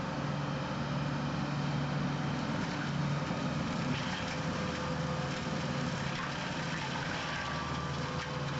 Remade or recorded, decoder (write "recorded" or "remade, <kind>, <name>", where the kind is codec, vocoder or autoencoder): recorded